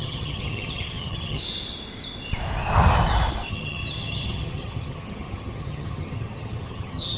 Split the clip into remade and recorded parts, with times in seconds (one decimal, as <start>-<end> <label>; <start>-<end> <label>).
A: 0.0-1.4 remade; 1.4-3.5 recorded; 3.5-7.2 remade